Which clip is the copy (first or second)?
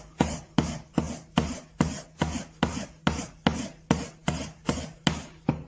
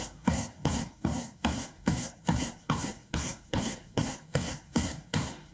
second